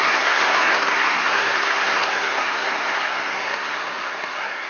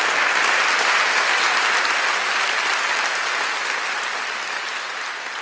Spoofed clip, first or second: first